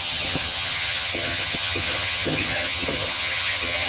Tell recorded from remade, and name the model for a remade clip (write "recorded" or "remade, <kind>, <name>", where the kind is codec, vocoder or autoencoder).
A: remade, vocoder, HiFi-GAN